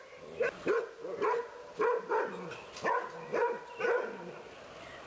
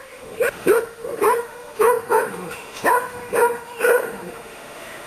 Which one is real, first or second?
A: first